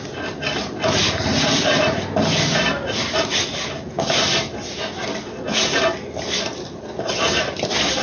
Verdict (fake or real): real